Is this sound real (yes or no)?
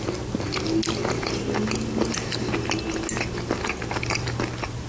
yes